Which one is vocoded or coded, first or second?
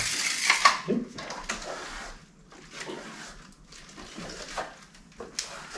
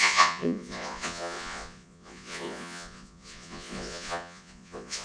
second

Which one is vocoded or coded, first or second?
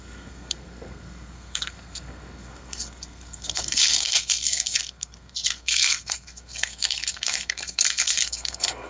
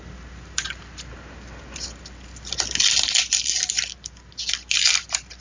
first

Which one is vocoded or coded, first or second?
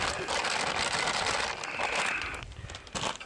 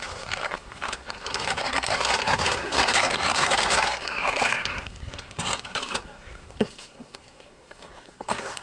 second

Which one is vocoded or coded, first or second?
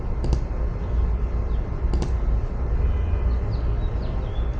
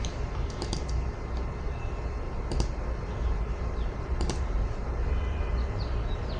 second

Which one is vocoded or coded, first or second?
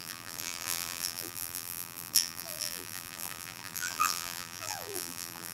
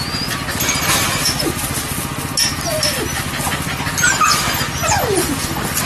first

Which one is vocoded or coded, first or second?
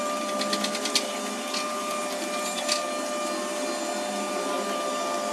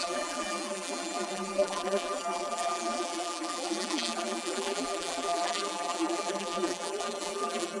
second